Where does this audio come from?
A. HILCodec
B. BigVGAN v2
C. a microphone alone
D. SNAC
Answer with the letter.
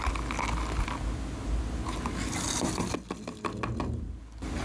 C